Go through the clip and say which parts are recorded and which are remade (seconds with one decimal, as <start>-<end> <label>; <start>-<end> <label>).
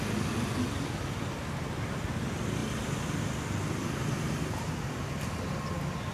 0.0-6.1 recorded